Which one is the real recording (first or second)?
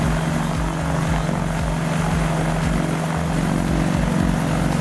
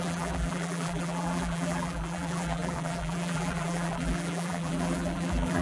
first